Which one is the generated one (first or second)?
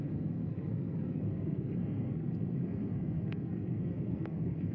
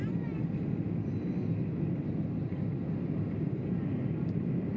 first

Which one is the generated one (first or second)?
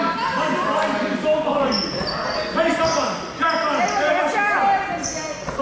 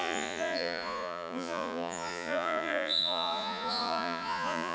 second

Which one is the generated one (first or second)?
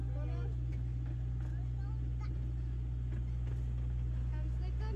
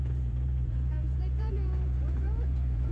second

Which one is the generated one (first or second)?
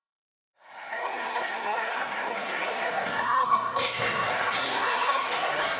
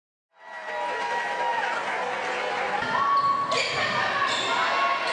first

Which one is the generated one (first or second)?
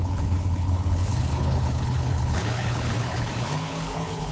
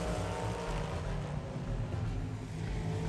first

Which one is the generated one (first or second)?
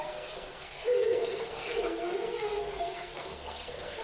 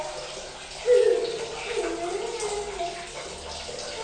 first